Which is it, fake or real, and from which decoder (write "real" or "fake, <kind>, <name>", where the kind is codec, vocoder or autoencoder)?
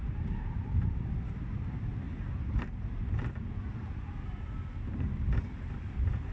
real